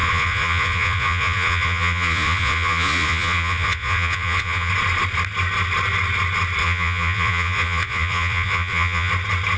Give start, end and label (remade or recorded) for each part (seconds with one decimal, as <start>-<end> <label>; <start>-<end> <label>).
0.0-4.7 remade; 4.7-6.6 recorded; 6.6-9.1 remade; 9.1-9.6 recorded